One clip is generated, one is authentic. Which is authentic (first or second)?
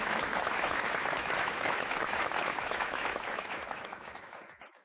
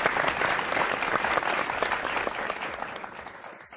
second